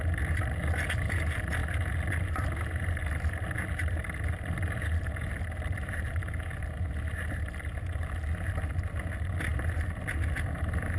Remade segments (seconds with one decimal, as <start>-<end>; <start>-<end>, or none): none